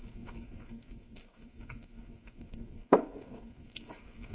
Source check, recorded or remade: remade